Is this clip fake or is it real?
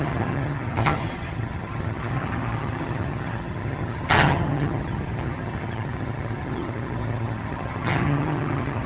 fake